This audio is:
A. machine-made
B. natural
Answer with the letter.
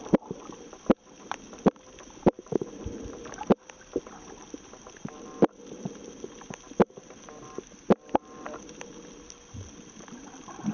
B